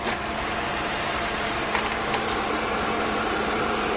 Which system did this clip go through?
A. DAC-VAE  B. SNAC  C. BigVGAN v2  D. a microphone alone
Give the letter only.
C